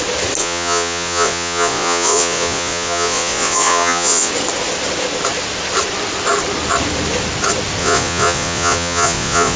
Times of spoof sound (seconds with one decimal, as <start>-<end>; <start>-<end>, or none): 0.4-4.3; 7.8-9.6

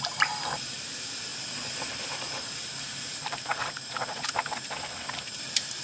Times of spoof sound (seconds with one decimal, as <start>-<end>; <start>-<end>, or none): 0.0-1.3; 2.0-5.8